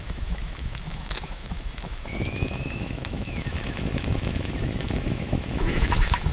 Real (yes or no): no